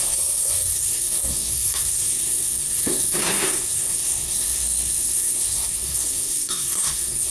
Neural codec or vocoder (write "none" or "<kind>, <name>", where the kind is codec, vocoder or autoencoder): codec, SNAC